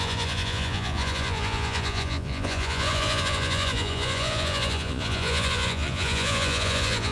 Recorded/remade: remade